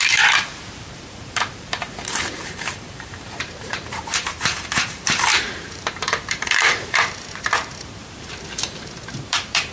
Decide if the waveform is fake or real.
fake